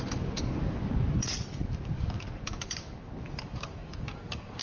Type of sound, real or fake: fake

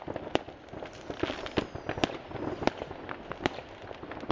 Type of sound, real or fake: real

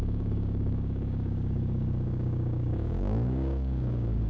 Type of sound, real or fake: fake